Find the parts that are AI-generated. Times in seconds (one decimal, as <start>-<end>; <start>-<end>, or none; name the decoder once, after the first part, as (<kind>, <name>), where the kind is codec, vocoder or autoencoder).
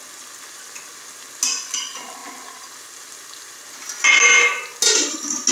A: none